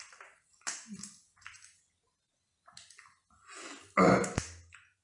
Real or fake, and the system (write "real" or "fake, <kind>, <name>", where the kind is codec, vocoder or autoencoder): real